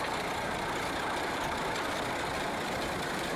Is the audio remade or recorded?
recorded